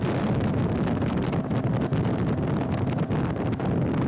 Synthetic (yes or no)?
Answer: no